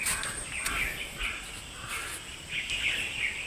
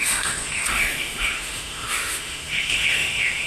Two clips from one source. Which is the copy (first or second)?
second